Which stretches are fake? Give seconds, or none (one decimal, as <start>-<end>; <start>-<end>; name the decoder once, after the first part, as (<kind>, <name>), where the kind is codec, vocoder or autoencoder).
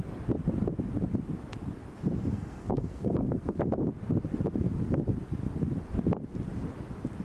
2.3-3.6 (codec, SNAC)